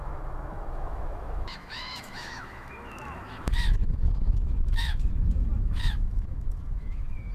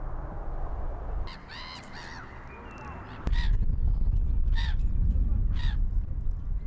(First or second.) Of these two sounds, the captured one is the second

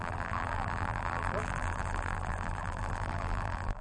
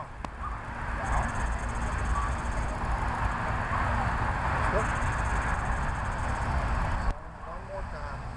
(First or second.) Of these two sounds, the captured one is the second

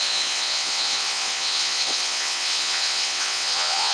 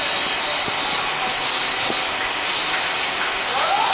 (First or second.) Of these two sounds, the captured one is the second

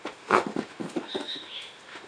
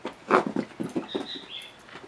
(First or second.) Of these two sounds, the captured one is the second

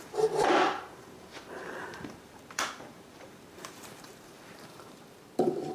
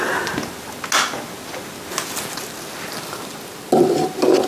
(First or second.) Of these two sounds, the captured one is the second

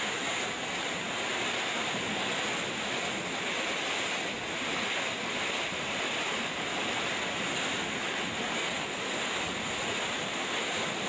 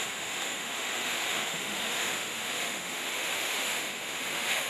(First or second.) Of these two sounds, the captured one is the first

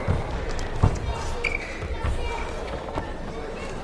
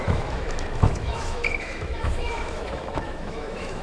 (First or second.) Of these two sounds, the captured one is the first